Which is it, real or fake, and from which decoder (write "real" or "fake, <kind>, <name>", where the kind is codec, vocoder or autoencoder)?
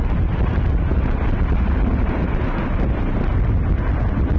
real